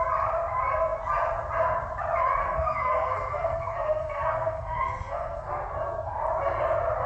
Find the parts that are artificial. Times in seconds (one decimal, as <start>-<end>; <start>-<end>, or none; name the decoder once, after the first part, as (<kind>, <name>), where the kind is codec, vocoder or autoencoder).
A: 2.4-5.5 (codec, SNAC)

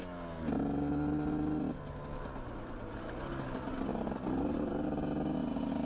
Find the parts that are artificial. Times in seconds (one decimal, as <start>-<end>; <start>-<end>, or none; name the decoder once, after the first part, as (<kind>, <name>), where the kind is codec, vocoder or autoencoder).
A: none